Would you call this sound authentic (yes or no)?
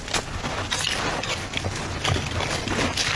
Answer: yes